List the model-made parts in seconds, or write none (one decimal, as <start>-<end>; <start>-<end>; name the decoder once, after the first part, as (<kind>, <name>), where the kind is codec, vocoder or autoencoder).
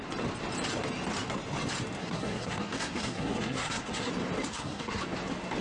2.0-4.1 (codec, SNAC); 4.5-5.0